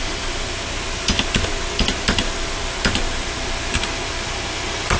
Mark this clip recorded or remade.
recorded